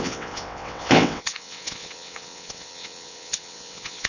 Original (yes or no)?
no